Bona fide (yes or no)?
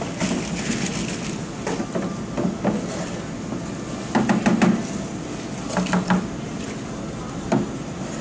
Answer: yes